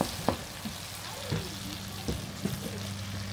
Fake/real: real